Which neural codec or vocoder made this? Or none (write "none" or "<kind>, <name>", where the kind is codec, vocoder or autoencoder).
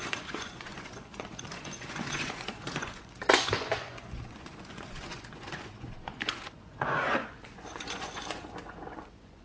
vocoder, Vocos